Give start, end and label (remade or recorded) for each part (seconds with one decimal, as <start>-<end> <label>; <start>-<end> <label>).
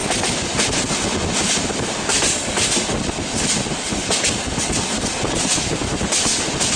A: 0.0-6.8 recorded